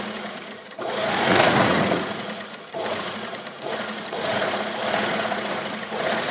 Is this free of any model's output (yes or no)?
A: no